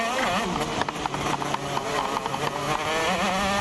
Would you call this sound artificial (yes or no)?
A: no